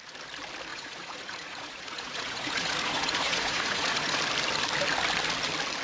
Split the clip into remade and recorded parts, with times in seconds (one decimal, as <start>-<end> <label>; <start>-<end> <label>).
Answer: 0.0-0.7 recorded; 0.7-4.2 remade; 4.2-5.8 recorded